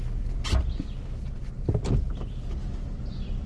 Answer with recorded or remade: recorded